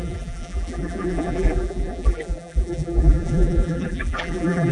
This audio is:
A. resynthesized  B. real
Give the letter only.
A